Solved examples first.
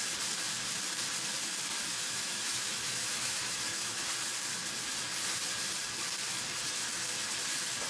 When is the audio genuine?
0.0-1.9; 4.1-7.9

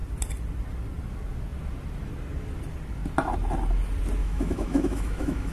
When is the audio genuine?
0.0-4.2

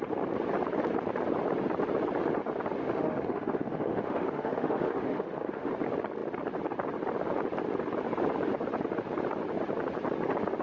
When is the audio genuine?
0.0-2.8; 5.7-10.6

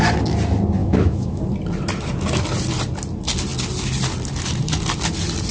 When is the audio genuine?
0.0-0.8; 1.4-5.5

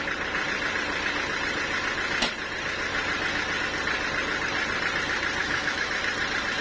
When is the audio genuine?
0.0-5.4; 6.0-6.6

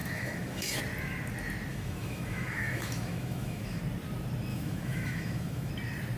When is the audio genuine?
0.8-1.7; 3.8-4.5; 5.7-6.2

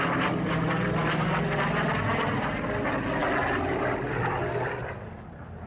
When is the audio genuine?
0.0-5.7